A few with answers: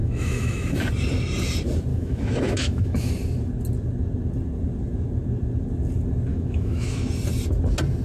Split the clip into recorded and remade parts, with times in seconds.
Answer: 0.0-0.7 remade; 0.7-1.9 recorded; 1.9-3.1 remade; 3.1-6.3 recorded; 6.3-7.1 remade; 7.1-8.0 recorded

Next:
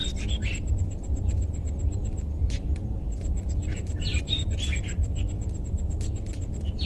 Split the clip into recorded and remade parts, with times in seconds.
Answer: 0.0-0.7 remade; 0.7-3.7 recorded; 3.7-4.4 remade; 4.4-5.0 recorded; 5.0-5.6 remade; 5.6-6.9 recorded

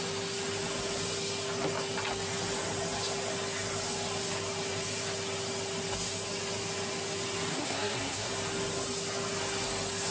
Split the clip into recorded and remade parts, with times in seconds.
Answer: 0.0-7.5 recorded; 7.5-8.3 remade; 8.3-10.1 recorded

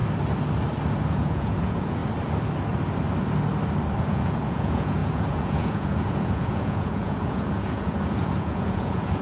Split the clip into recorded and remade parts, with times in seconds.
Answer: 0.0-1.1 recorded; 1.1-2.0 remade; 2.0-4.0 recorded; 4.0-9.2 remade